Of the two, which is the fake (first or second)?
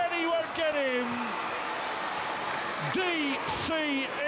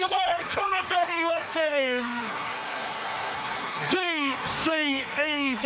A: second